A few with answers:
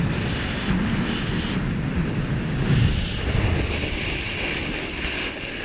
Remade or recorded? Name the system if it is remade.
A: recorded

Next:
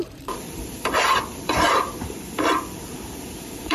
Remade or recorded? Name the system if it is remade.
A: remade, vocoder, BigVGAN v2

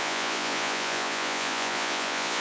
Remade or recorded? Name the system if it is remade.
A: remade, vocoder, Vocos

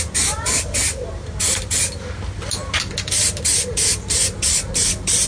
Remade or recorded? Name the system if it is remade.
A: recorded